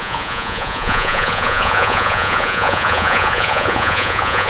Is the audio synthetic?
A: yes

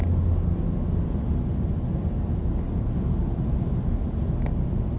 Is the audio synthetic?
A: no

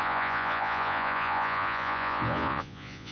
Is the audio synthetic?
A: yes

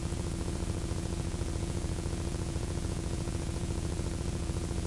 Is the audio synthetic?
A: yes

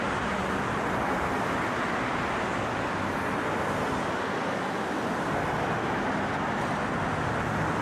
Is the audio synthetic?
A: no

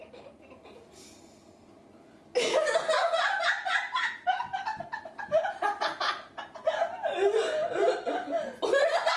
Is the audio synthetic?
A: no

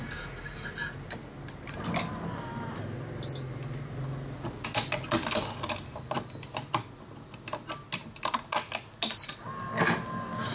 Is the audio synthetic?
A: no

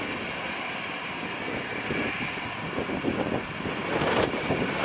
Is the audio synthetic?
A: no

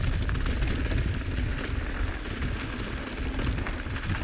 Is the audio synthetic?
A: no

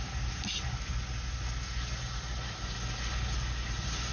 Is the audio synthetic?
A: no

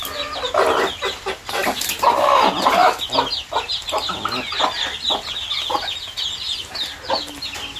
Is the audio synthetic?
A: no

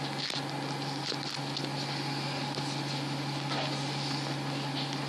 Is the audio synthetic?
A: no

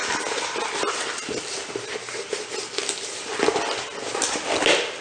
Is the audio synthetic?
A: no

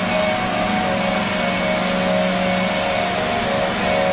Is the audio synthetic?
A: no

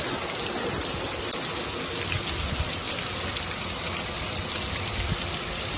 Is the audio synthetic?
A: no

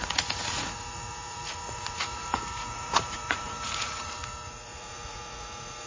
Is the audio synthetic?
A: yes